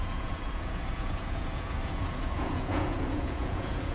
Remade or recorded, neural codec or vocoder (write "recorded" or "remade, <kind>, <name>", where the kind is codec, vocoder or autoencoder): remade, vocoder, Vocos